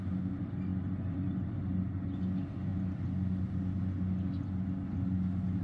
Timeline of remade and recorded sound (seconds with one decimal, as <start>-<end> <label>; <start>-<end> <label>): 0.0-5.6 recorded